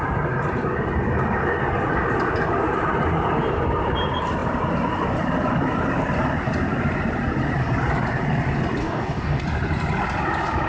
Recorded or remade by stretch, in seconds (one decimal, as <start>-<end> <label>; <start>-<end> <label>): 0.0-8.8 recorded; 8.8-9.4 remade; 9.4-10.7 recorded